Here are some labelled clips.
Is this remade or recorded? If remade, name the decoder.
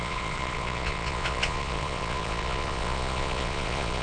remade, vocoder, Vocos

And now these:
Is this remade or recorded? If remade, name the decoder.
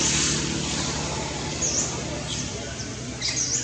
recorded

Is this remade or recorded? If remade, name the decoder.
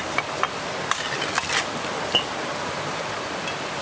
recorded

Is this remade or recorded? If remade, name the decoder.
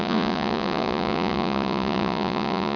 remade, vocoder, Vocos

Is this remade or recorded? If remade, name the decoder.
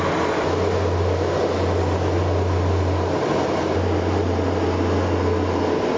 recorded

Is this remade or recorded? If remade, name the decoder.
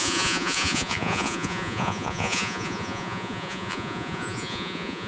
remade, vocoder, Vocos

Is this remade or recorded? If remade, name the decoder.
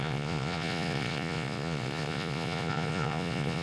remade, vocoder, Vocos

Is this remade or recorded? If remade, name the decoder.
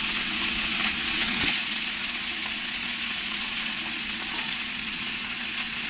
remade, vocoder, Vocos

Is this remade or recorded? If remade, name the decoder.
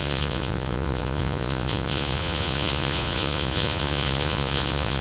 remade, vocoder, Vocos